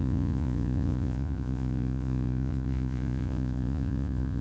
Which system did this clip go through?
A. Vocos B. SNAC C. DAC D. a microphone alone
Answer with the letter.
A